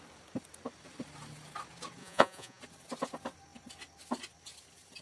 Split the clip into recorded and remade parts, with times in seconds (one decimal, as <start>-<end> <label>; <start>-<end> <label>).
0.0-2.0 recorded; 2.0-2.6 remade; 2.6-5.0 recorded